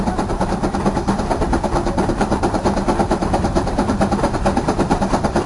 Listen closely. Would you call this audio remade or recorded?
remade